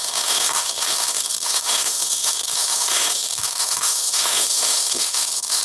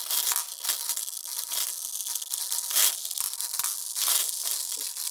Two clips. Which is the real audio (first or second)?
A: second